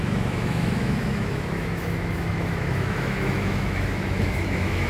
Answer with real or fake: fake